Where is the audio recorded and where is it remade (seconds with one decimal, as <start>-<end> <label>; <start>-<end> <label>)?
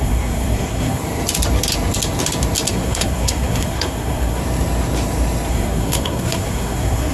0.0-1.0 remade; 1.0-2.7 recorded; 2.7-4.4 remade; 4.4-5.5 recorded; 5.5-7.1 remade